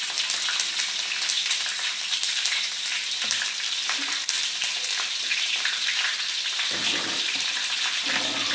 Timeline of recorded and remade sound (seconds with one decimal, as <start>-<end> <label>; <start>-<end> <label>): 0.0-1.4 recorded; 1.4-6.2 remade; 6.2-6.8 recorded; 6.8-8.1 remade; 8.1-8.5 recorded